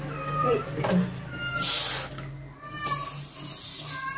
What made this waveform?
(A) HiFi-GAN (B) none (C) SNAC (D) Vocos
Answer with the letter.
B